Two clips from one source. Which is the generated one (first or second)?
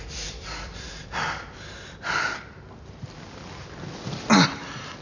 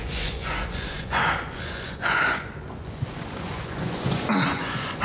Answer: second